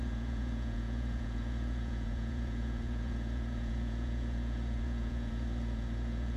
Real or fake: fake